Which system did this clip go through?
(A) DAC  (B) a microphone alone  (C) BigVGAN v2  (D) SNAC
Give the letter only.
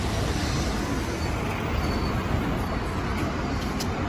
B